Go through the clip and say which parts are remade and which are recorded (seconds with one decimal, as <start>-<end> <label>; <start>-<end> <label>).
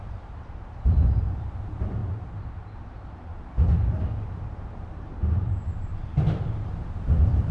0.0-2.0 remade; 2.0-4.4 recorded; 4.4-7.5 remade